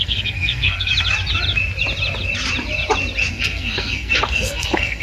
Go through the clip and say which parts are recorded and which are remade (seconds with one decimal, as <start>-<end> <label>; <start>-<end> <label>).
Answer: 0.0-0.9 remade; 0.9-3.3 recorded; 3.3-5.0 remade